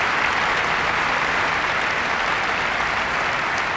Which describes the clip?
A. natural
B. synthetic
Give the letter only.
A